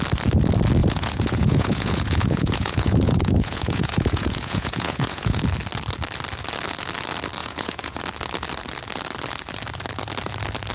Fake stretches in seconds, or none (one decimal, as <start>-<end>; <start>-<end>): 0.8-5.4; 7.4-8.0